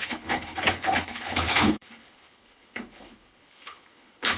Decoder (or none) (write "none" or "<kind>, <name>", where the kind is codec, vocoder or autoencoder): codec, HILCodec